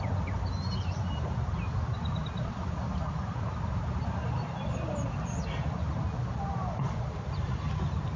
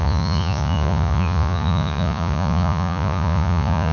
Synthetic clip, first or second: second